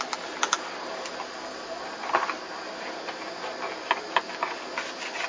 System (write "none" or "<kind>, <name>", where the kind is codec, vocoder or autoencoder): none